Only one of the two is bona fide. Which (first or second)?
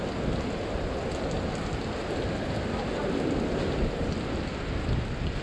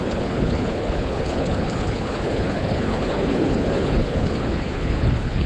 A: first